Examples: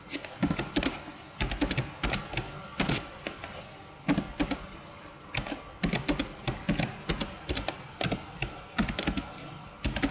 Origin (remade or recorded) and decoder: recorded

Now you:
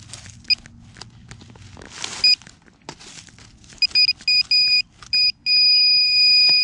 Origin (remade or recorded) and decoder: recorded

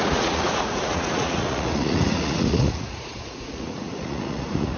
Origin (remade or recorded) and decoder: remade, vocoder, Vocos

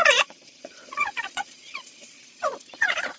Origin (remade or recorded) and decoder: remade, vocoder, Vocos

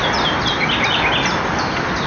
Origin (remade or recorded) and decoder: recorded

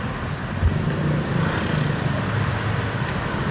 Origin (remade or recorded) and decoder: recorded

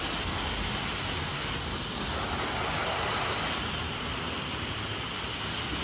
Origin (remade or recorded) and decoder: recorded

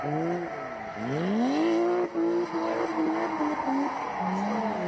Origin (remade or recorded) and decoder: recorded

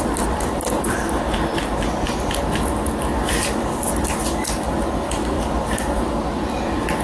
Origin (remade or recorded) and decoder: recorded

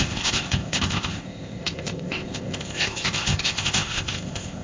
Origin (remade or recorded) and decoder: remade, codec, ZipCodec